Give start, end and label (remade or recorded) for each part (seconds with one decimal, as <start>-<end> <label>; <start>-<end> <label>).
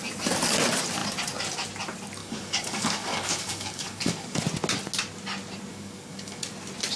0.0-2.2 recorded; 2.2-4.4 remade; 4.4-5.7 recorded; 5.7-6.5 remade; 6.5-7.0 recorded